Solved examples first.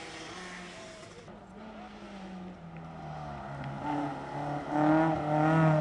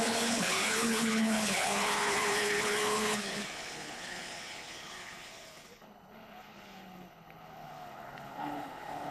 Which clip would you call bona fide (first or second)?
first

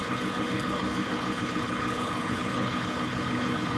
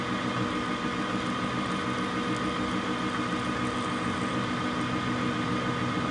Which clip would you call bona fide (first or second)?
second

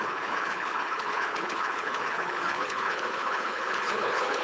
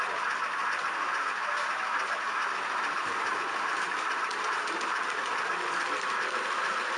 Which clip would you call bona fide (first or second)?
second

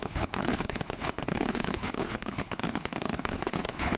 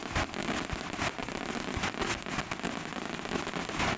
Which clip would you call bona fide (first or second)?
second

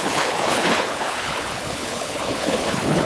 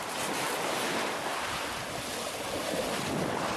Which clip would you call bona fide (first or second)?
second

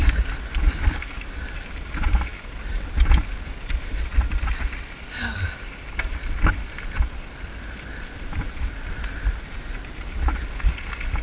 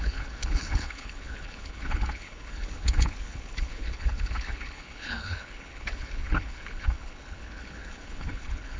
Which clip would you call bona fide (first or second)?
first